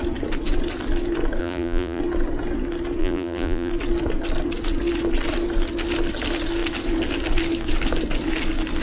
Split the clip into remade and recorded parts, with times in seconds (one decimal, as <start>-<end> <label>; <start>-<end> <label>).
0.0-1.4 recorded; 1.4-2.0 remade; 2.0-3.0 recorded; 3.0-3.7 remade; 3.7-8.8 recorded

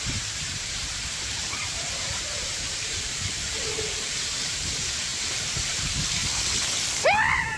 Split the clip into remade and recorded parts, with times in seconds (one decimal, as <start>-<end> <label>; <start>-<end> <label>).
0.0-6.2 remade; 6.2-7.6 recorded

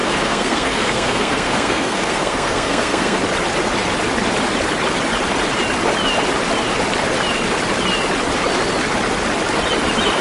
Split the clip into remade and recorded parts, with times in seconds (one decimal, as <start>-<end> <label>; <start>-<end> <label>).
0.0-3.2 remade; 3.2-10.2 recorded

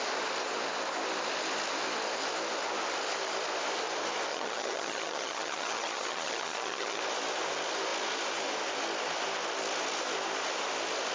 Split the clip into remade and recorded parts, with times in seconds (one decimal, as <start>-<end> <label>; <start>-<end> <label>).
0.0-4.3 recorded; 4.3-7.0 remade; 7.0-11.1 recorded

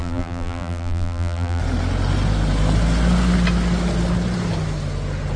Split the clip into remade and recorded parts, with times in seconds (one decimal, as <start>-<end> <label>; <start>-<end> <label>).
0.0-1.6 remade; 1.6-5.4 recorded

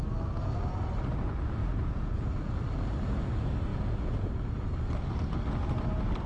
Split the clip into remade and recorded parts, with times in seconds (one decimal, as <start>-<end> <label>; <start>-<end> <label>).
0.0-1.6 recorded; 1.6-2.5 remade; 2.5-3.7 recorded; 3.7-4.3 remade; 4.3-6.3 recorded